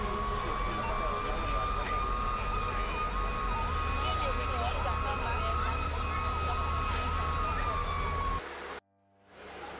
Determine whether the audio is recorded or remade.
recorded